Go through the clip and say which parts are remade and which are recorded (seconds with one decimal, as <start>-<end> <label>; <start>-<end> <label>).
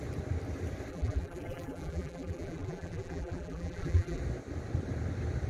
0.0-0.9 recorded; 0.9-4.2 remade; 4.2-5.5 recorded